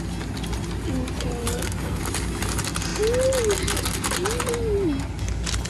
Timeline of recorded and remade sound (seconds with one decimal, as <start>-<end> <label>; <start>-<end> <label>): 0.0-1.4 recorded; 1.4-2.0 remade; 2.0-5.7 recorded